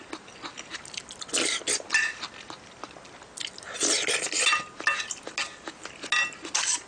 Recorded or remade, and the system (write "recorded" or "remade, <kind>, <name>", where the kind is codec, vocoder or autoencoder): recorded